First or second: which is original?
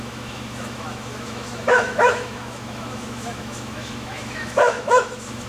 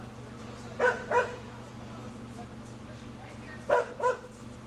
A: second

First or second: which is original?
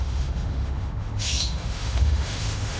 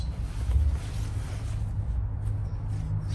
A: second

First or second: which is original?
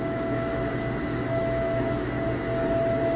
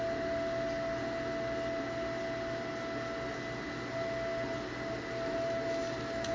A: second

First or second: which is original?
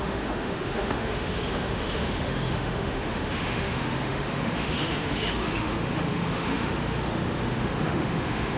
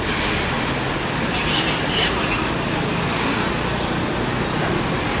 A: second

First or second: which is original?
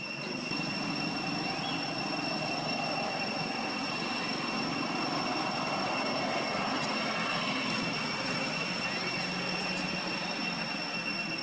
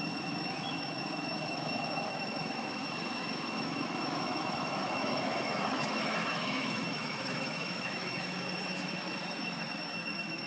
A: first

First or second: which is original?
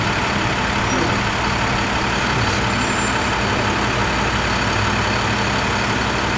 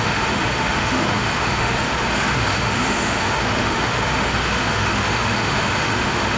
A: first